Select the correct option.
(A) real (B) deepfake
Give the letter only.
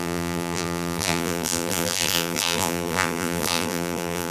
B